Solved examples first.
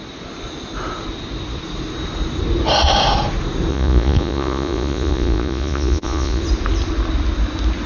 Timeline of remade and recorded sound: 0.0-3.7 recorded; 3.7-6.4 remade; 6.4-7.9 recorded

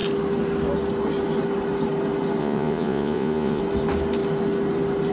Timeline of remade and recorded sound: 0.0-2.4 recorded; 2.4-3.6 remade; 3.6-5.1 recorded

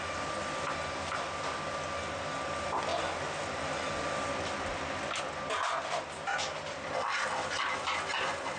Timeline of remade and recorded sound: 0.0-8.6 recorded

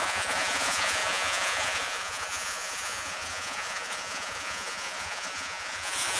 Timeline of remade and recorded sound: 0.0-6.2 remade

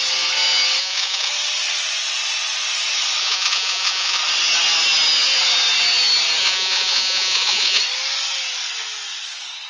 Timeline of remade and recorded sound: 0.0-0.8 recorded; 0.8-1.3 remade; 1.3-3.2 recorded; 3.2-4.2 remade; 4.2-6.4 recorded; 6.4-7.8 remade; 7.8-9.7 recorded